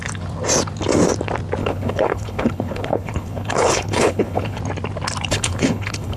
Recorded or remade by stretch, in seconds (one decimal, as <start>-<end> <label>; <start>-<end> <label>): 0.0-1.6 recorded; 1.6-4.6 remade; 4.6-5.3 recorded; 5.3-6.2 remade